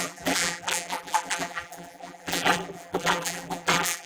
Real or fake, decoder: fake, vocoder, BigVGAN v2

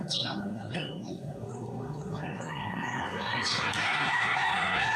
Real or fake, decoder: fake, codec, SNAC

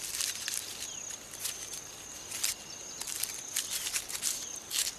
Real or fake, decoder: real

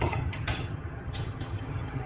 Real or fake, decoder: fake, vocoder, HiFi-GAN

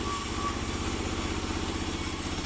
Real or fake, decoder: real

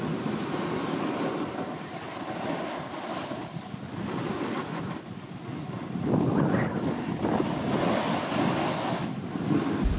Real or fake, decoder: real